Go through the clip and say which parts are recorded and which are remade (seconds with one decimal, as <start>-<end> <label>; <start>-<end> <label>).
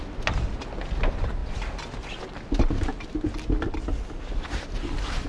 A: 0.0-5.3 recorded